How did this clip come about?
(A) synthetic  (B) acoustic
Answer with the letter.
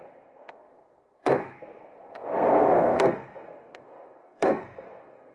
A